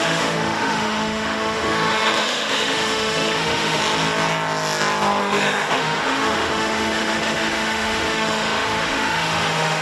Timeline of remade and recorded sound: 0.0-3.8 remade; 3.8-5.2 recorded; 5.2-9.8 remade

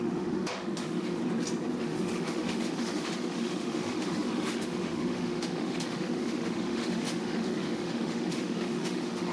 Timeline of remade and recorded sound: 0.0-1.2 remade; 1.2-1.8 recorded; 1.8-9.3 remade